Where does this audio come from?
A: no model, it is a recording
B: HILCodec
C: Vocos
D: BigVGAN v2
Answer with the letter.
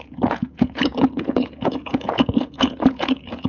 C